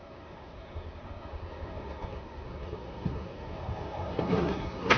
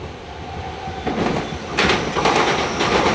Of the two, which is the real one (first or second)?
second